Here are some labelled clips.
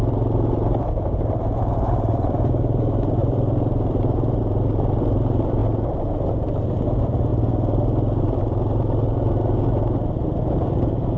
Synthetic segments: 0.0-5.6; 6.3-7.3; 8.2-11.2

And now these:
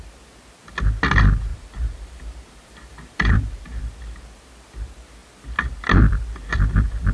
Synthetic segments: 1.5-3.8

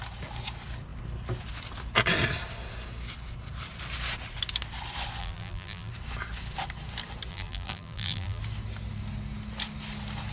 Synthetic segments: 5.2-5.9; 7.3-8.4

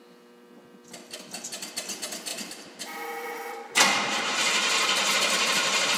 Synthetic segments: 2.3-6.0